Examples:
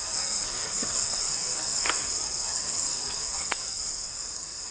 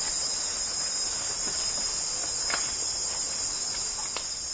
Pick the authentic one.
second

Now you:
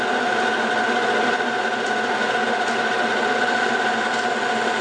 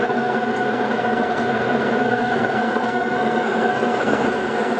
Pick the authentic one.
first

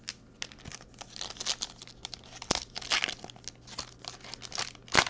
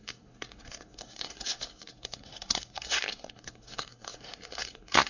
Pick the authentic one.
first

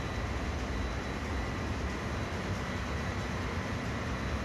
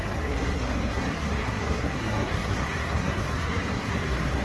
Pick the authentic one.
first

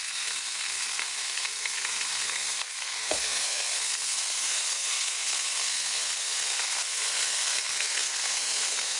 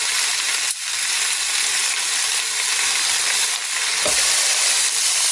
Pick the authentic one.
second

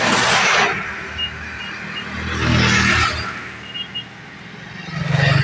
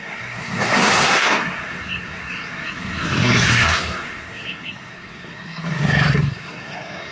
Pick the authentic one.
first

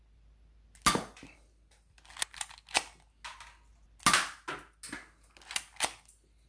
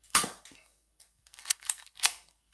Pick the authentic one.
first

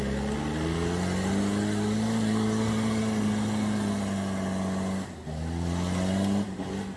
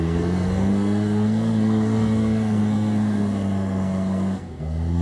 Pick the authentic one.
first